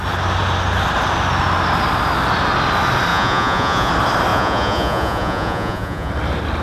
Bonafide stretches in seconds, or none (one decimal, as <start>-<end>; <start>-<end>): 0.0-3.1; 3.9-4.3; 6.1-6.6